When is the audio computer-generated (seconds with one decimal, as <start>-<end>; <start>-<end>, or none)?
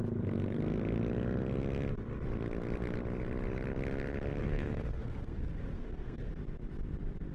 4.4-6.3